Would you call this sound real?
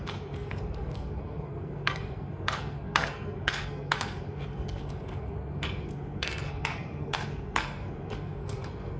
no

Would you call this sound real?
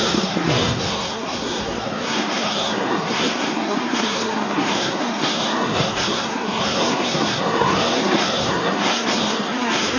no